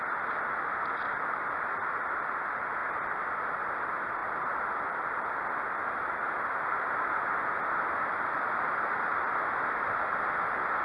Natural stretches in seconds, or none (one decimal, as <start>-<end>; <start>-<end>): 0.0-10.8